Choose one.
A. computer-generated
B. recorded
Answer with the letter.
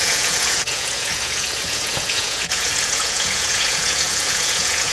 A